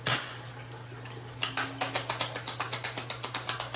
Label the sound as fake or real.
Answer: real